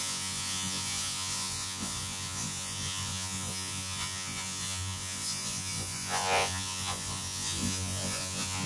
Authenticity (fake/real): fake